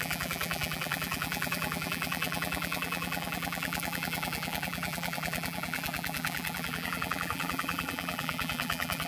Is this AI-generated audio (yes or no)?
yes